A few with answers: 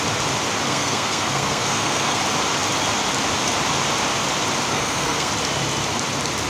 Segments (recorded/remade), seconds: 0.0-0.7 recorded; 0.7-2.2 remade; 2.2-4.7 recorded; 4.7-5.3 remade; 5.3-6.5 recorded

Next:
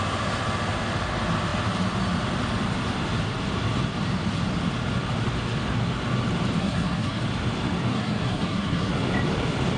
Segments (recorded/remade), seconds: 0.0-6.6 recorded; 6.6-7.2 remade; 7.2-7.9 recorded; 7.9-8.9 remade; 8.9-9.8 recorded

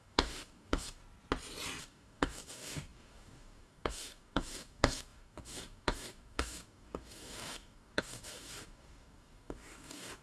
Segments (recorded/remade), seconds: 0.0-1.0 remade; 1.0-1.8 recorded; 1.8-10.2 remade

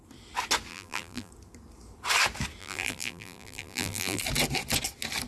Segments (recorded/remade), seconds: 0.0-0.7 recorded; 0.7-1.3 remade; 1.3-2.6 recorded; 2.6-4.2 remade; 4.2-5.3 recorded

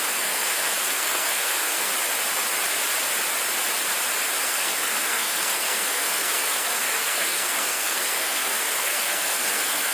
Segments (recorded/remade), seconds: 0.0-1.9 remade; 1.9-4.4 recorded; 4.4-9.9 remade

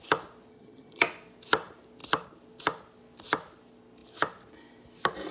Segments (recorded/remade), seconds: 0.0-0.5 recorded; 0.5-1.0 remade; 1.0-5.3 recorded